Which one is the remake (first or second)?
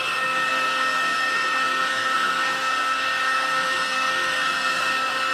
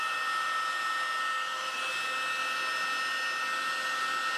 first